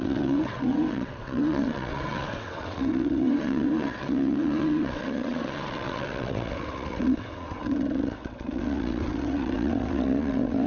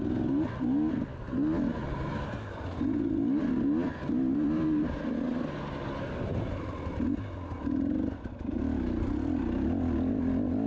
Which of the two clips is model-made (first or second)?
first